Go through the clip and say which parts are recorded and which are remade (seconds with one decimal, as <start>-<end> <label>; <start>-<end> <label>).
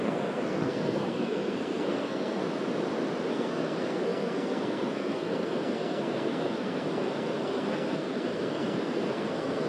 0.0-2.4 remade; 2.4-3.3 recorded; 3.3-9.7 remade